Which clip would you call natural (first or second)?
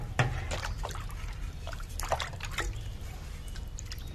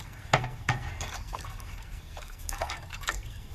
first